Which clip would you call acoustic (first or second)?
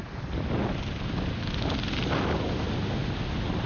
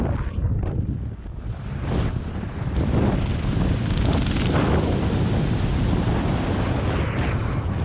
first